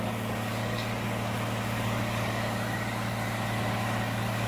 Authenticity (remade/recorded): remade